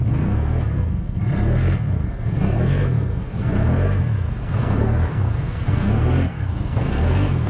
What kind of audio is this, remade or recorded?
remade